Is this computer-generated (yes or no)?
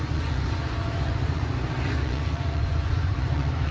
yes